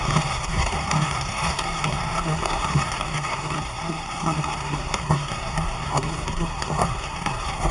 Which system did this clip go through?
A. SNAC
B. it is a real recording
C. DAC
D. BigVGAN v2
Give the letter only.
A